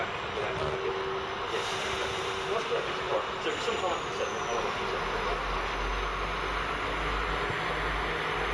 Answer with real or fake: real